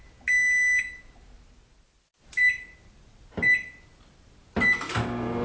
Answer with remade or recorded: recorded